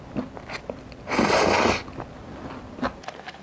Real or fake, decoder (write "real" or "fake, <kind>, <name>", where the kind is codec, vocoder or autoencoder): real